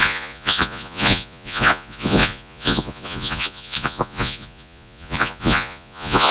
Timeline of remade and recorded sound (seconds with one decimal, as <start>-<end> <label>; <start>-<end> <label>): 0.0-6.3 remade